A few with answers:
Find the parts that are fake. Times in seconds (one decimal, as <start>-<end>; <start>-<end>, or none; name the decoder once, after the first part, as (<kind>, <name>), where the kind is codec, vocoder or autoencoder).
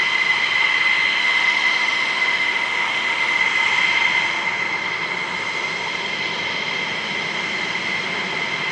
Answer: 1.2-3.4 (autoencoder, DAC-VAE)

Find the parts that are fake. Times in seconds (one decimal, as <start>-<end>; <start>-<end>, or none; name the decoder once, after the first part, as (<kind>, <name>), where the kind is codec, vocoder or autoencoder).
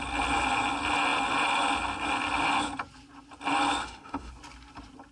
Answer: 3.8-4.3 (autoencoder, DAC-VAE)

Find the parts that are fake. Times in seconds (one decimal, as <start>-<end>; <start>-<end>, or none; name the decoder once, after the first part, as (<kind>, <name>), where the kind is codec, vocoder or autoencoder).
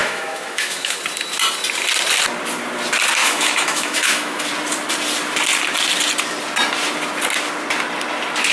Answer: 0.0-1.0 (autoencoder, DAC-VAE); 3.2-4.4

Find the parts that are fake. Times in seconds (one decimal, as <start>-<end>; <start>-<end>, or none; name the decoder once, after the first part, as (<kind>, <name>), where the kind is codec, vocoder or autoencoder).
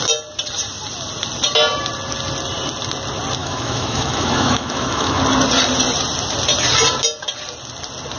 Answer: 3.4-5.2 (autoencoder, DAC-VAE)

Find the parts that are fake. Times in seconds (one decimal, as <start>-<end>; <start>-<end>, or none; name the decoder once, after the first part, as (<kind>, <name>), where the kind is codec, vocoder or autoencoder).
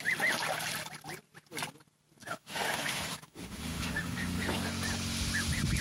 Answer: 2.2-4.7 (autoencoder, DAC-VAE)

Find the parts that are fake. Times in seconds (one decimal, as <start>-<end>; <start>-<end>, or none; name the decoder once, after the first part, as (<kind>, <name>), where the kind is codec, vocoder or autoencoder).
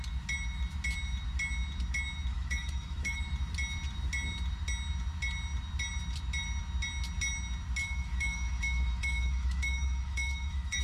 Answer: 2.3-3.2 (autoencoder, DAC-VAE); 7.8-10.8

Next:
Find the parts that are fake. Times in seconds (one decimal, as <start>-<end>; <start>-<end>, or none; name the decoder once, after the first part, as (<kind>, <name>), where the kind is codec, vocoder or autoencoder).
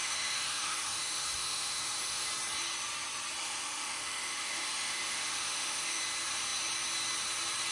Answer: 0.0-2.3 (autoencoder, DAC-VAE); 3.4-6.0